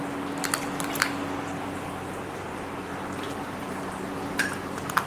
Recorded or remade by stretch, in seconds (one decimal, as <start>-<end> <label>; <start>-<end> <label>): 0.0-5.1 recorded